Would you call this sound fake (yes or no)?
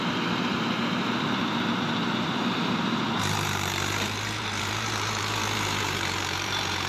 yes